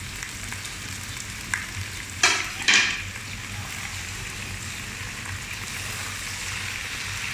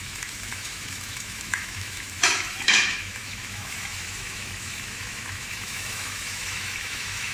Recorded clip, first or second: first